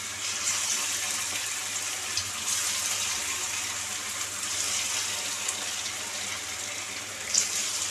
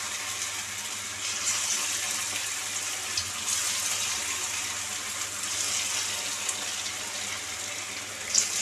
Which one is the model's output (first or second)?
first